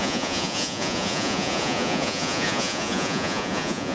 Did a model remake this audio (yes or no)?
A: yes